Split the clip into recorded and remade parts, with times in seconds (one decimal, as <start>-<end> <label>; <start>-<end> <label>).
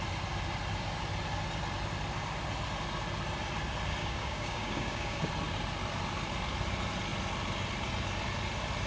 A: 0.0-4.0 recorded; 4.0-5.3 remade; 5.3-8.9 recorded